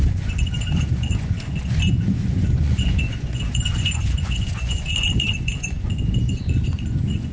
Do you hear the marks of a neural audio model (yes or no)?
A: yes